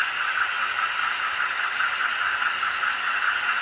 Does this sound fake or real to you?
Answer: real